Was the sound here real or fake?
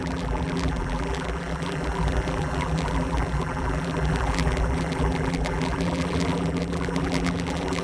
fake